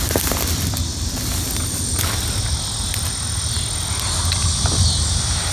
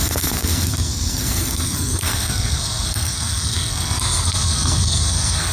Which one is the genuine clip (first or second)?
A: first